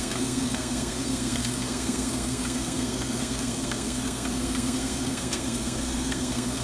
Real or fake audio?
fake